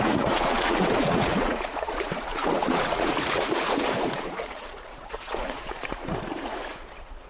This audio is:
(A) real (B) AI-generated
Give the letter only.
B